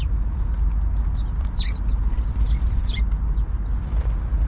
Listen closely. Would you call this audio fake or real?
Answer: real